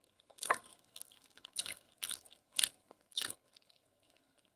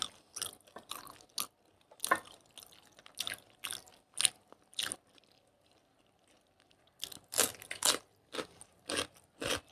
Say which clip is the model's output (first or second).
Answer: first